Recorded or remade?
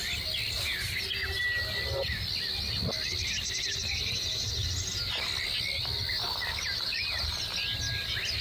recorded